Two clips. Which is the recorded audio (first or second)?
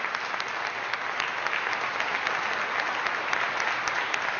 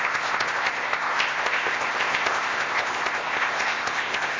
first